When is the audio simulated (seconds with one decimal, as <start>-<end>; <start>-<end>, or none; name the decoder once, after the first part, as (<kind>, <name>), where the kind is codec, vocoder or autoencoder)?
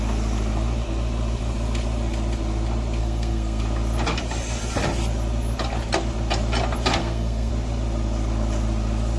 3.0-3.6 (codec, SNAC); 7.0-7.5